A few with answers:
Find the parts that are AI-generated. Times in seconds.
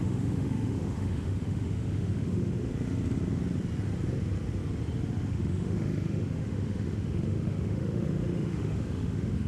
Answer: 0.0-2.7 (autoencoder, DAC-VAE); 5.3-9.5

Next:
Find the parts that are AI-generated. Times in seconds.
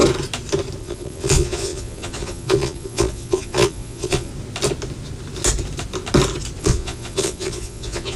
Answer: 0.8-4.3 (vocoder, Vocos); 6.6-8.2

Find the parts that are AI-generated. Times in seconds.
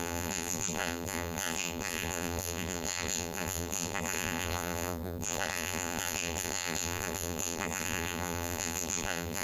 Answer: 0.0-9.4 (vocoder, BigVGAN v2)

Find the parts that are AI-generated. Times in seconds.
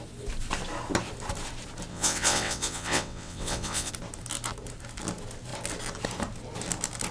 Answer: 1.9-3.9 (vocoder, WaveNeXt)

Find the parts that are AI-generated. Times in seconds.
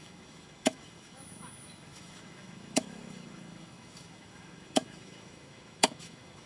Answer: 0.0-6.5 (autoencoder, DAC-VAE)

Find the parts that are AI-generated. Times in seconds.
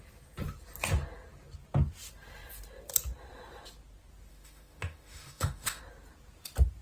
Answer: 4.3-5.8 (autoencoder, DAC-VAE)